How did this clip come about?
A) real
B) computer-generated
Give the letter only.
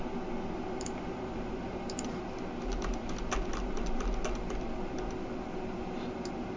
A